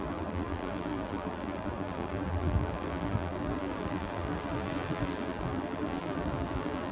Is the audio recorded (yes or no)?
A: no